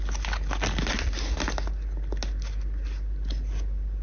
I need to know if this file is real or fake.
real